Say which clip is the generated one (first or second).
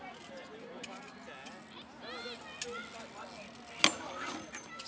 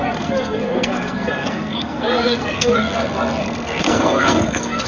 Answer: second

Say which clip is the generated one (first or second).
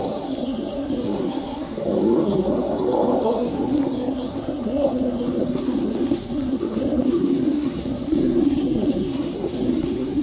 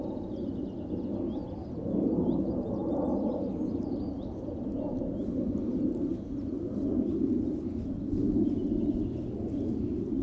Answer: first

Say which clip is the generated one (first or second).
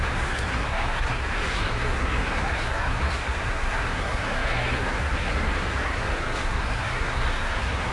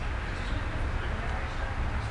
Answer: first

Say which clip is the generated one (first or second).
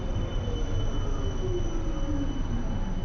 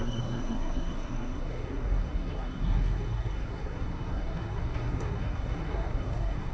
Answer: second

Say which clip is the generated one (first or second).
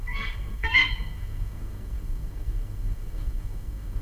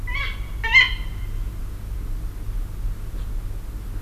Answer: first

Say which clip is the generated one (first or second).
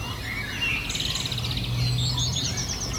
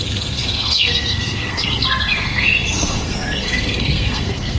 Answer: second